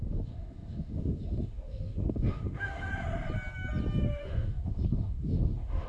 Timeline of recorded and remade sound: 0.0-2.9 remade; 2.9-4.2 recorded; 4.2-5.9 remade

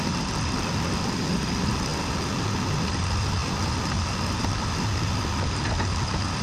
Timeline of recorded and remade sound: 0.0-6.4 recorded